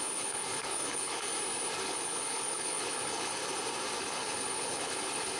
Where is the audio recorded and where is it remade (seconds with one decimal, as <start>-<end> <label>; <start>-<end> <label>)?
0.0-1.3 remade; 1.3-1.8 recorded; 1.8-3.4 remade; 3.4-4.0 recorded; 4.0-5.4 remade